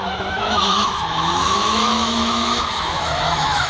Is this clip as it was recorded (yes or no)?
no